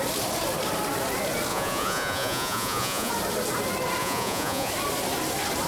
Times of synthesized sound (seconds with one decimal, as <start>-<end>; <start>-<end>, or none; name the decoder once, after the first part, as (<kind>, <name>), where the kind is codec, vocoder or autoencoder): 1.5-3.1 (vocoder, Vocos); 4.0-4.7